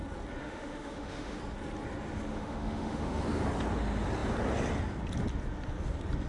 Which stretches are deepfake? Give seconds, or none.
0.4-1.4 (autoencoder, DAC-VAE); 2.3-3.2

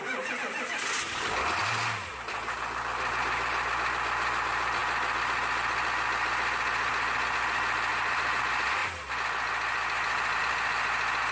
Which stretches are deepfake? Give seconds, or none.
7.9-8.4 (vocoder, BigVGAN v2)

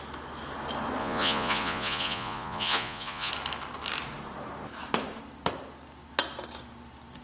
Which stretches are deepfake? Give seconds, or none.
1.0-3.3 (vocoder, Vocos)

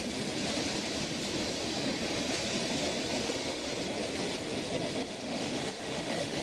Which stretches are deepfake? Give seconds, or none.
3.2-3.7 (autoencoder, DAC-VAE); 5.2-6.4

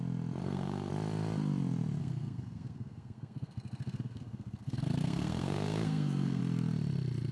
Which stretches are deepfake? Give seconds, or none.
0.4-0.9 (codec, SNAC); 2.0-6.4

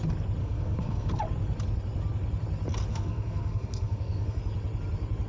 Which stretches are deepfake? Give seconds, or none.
0.4-1.1 (codec, SNAC); 2.9-4.4

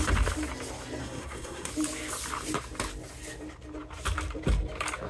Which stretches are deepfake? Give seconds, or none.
1.0-1.7 (codec, SNAC)